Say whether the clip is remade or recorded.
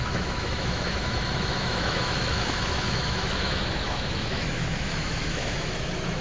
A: remade